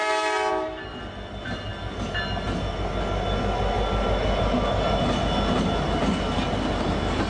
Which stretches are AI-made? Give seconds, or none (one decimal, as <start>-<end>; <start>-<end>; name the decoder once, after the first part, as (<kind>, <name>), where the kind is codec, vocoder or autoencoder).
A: none